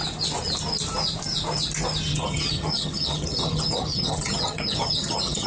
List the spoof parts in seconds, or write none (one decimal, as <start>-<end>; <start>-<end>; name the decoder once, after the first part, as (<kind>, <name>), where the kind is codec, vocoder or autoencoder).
2.1-5.5 (vocoder, HiFi-GAN)